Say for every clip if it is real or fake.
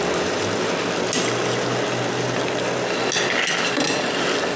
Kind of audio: real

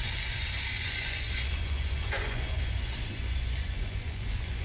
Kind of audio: fake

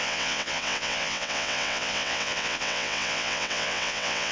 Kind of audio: fake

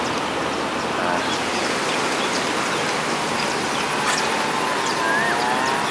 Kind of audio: real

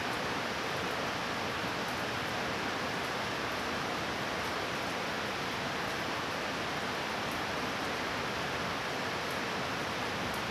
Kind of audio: real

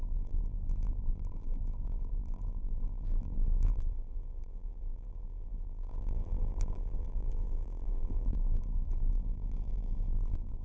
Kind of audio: fake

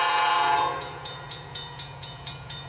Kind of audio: fake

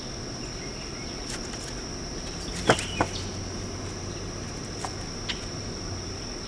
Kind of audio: real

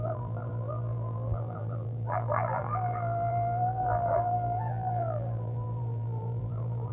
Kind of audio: fake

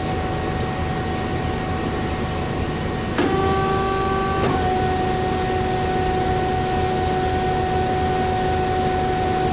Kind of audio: real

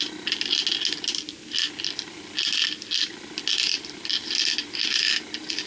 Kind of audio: real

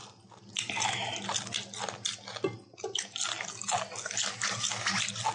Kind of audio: real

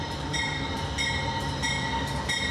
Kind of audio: fake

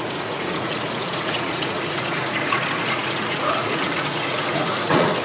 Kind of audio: fake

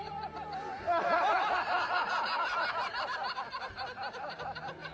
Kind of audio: real